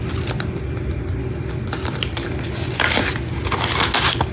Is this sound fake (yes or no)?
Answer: no